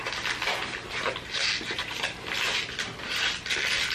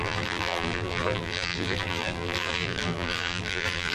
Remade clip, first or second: second